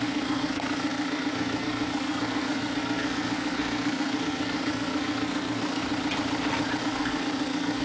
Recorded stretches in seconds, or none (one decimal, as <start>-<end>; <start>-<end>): 5.9-6.8

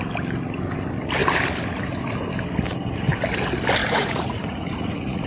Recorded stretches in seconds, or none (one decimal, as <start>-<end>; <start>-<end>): 0.0-3.8

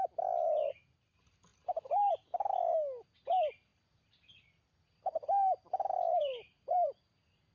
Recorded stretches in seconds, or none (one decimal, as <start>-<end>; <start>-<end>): 0.0-1.5; 2.1-3.7; 7.0-7.5

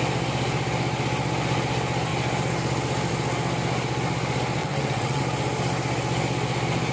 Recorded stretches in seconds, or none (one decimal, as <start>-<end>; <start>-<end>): 0.0-4.6; 5.2-6.9